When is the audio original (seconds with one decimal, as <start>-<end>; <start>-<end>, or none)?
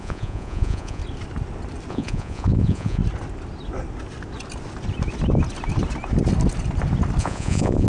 1.0-1.9; 3.0-7.2